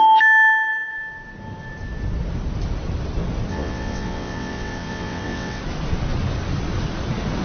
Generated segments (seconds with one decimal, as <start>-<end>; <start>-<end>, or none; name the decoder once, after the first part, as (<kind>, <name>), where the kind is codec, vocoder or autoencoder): 3.5-5.6 (vocoder, WaveNeXt)